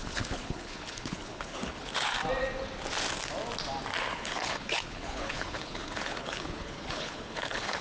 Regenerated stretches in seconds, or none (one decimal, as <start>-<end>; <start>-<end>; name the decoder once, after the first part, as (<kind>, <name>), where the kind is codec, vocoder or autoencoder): 0.0-2.1 (codec, HILCodec); 4.1-7.8